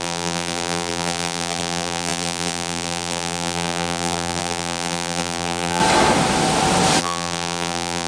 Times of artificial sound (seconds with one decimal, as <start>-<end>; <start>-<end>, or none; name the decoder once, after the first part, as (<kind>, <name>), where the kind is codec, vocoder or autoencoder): 0.0-5.8 (vocoder, BigVGAN v2); 7.0-8.1